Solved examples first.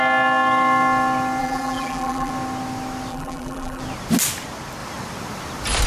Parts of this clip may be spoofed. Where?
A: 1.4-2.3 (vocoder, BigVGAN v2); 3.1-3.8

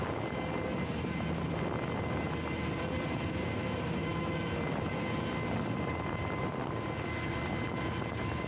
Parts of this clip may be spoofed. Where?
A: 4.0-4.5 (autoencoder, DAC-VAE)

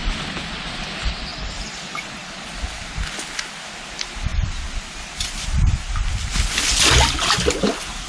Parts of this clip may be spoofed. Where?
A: 1.3-2.5 (vocoder, BigVGAN v2); 4.3-5.3

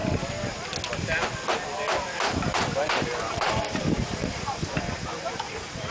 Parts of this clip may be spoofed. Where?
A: 2.2-5.9 (vocoder, BigVGAN v2)

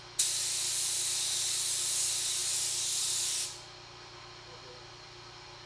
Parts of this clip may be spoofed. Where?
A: none

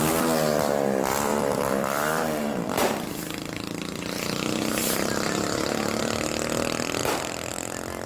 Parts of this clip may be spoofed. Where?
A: 1.3-6.0 (vocoder, BigVGAN v2); 7.0-7.5

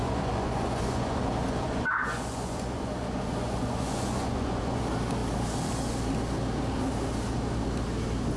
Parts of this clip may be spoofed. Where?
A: 0.0-4.8 (vocoder, Vocos)